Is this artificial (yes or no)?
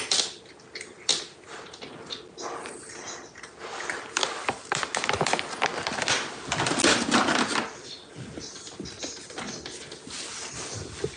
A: no